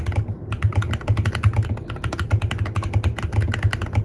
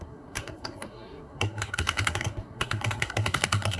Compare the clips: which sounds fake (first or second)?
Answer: second